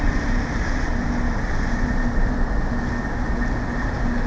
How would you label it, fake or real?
real